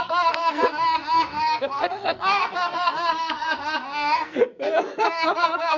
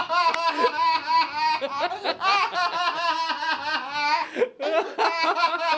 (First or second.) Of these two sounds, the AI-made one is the first